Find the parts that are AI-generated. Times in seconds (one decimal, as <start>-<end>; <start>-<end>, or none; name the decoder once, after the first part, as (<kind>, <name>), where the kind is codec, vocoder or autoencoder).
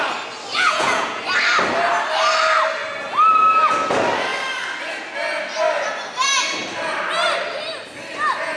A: 0.5-1.2 (vocoder, Vocos)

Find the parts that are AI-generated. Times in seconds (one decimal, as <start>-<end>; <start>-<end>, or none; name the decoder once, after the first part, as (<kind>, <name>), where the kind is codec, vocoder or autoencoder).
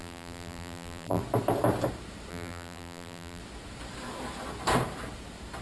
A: 0.0-1.2 (vocoder, BigVGAN v2); 2.3-3.4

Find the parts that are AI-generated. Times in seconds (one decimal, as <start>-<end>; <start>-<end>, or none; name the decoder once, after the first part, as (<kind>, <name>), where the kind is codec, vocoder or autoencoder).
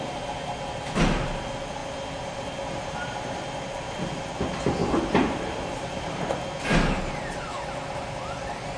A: 4.8-6.2 (vocoder, BigVGAN v2)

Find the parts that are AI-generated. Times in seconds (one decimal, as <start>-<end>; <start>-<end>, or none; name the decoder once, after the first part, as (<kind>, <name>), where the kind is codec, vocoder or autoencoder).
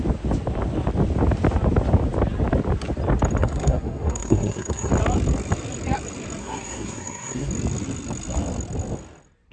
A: 3.4-4.9 (codec, SNAC); 6.4-7.5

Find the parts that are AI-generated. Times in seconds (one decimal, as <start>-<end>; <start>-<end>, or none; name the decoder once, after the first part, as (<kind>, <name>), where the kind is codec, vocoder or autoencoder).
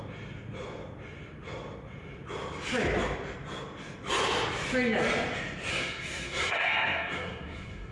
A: 5.7-7.9 (codec, SNAC)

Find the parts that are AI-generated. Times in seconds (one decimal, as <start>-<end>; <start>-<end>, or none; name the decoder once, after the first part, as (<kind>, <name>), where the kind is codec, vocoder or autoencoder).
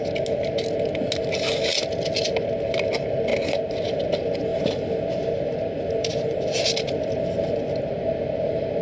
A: 4.5-7.6 (vocoder, BigVGAN v2)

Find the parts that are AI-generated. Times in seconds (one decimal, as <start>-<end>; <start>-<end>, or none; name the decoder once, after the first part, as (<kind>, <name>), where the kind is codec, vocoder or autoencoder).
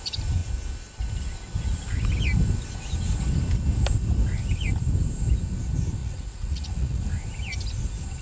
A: 6.0-7.0 (vocoder, Vocos)